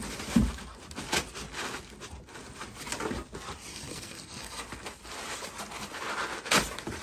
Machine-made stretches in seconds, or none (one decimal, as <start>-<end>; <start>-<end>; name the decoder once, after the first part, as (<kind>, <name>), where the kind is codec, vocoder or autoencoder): 3.7-4.6 (codec, SNAC)